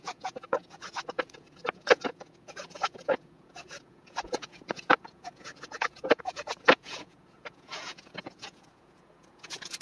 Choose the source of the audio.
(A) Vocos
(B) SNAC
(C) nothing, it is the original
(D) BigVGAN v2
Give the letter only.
A